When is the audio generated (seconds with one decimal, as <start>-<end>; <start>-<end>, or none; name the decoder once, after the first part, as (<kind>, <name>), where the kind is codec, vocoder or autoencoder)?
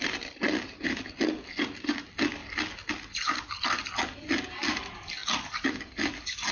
none